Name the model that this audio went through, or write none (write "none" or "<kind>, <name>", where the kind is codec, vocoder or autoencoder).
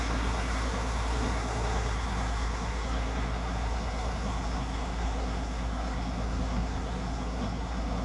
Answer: codec, SNAC